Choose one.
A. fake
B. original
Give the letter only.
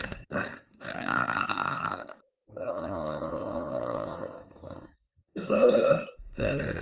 A